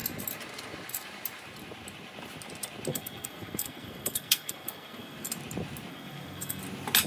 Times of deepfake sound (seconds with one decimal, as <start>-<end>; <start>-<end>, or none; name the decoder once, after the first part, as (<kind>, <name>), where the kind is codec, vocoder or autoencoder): 2.9-5.3 (codec, SNAC); 5.9-6.6